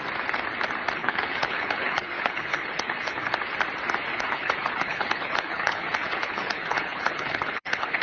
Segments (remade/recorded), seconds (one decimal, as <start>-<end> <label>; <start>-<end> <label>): 0.0-1.0 recorded; 1.0-3.3 remade; 3.3-4.1 recorded; 4.1-8.0 remade